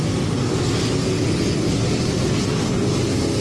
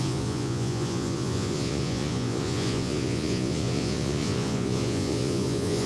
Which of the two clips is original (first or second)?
first